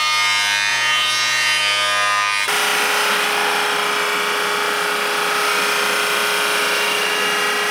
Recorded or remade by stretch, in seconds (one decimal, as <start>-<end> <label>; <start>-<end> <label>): 0.0-0.7 recorded; 0.7-1.6 remade; 1.6-7.7 recorded